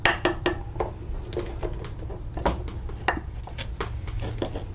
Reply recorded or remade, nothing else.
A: recorded